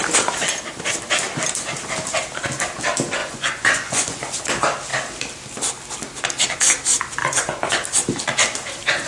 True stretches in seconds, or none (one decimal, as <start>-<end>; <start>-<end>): 0.0-3.2; 4.4-7.2; 7.7-9.1